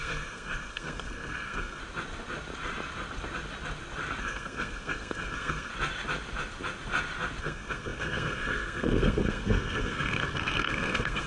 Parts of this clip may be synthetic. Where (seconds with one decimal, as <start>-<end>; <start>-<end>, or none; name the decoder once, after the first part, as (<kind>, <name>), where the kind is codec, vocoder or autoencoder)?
0.0-1.8 (codec, SNAC); 4.2-5.7; 7.4-11.3